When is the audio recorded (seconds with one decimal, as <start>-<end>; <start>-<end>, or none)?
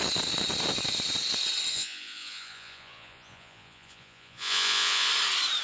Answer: 0.0-1.7; 5.1-5.6